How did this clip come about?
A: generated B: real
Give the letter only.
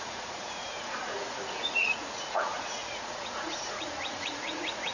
A